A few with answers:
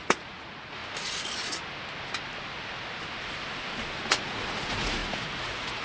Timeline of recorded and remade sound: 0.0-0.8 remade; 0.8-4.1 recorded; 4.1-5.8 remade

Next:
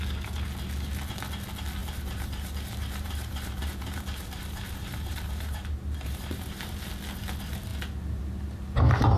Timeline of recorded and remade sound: 0.0-1.8 recorded; 1.8-6.9 remade; 6.9-9.2 recorded

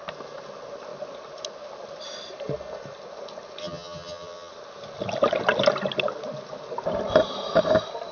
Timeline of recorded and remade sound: 0.0-3.6 recorded; 3.6-4.5 remade; 4.5-8.1 recorded

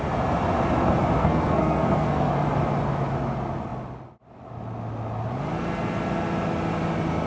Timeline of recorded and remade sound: 0.0-1.2 recorded; 1.2-2.3 remade; 2.3-7.3 recorded

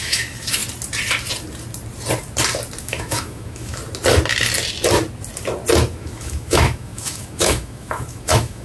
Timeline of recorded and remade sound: 0.0-0.6 remade; 0.6-2.8 recorded; 2.8-3.8 remade; 3.8-5.9 recorded; 5.9-8.6 remade

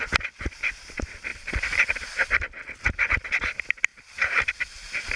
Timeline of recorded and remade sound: 0.0-1.3 recorded; 1.3-2.8 remade; 2.8-3.9 recorded; 3.9-4.5 remade; 4.5-5.2 recorded